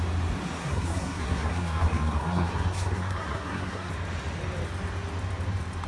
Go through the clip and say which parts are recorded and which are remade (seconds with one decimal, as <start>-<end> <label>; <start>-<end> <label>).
0.0-0.6 recorded; 0.6-3.9 remade; 3.9-5.9 recorded